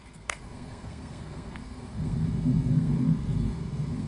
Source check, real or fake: fake